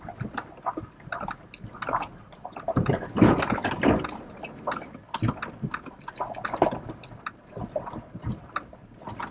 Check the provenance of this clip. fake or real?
real